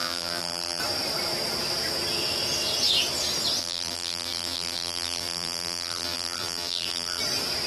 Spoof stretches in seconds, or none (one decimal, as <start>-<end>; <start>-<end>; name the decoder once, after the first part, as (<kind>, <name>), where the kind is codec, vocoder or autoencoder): 0.0-0.8 (vocoder, BigVGAN v2); 3.6-7.2